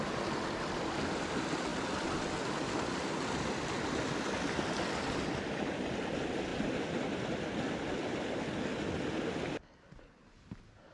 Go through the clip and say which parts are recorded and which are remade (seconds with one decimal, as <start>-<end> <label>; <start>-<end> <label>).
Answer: 0.0-10.9 recorded